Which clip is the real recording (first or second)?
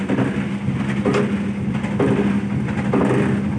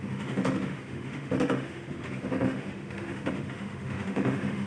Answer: first